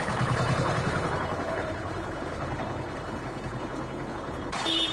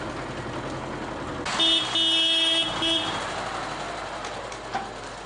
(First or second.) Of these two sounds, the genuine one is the second